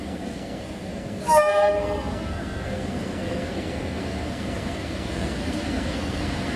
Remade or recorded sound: remade